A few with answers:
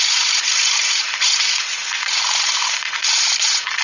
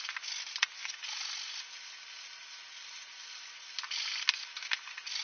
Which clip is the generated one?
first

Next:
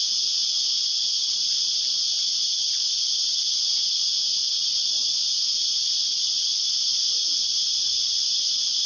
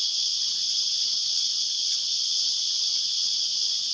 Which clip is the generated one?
second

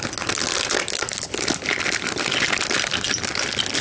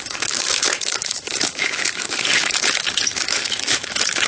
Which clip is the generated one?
second